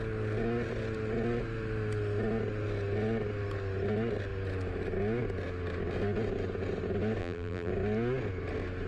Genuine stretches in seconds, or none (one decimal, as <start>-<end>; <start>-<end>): 0.0-7.2; 7.7-8.9